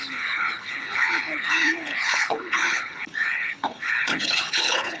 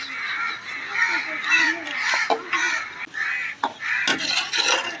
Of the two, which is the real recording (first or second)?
second